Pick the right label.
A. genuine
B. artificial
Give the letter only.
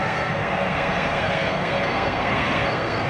B